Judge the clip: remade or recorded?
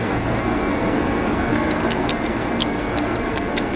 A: remade